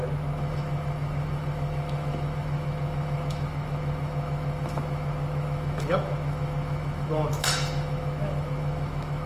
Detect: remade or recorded remade